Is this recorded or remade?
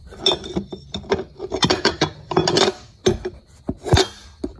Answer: recorded